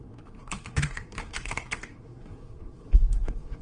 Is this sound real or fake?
fake